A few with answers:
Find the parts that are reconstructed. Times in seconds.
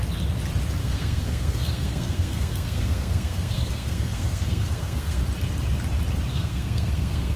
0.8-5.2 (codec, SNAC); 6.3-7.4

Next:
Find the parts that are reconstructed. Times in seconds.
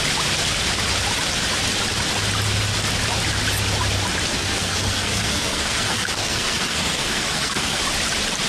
4.3-7.8 (codec, SNAC)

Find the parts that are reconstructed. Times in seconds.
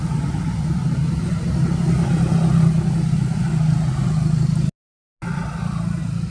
none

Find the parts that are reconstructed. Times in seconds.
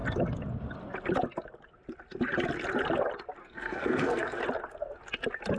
3.4-4.4 (codec, SNAC)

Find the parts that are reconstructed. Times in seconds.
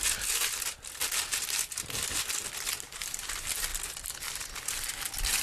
none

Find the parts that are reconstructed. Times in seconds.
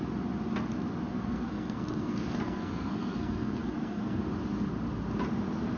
1.1-4.2 (codec, SNAC)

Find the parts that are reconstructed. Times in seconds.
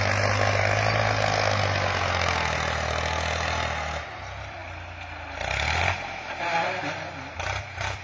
none